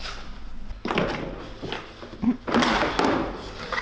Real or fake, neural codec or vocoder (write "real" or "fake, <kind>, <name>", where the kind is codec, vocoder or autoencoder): real